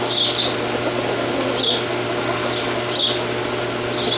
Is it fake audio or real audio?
real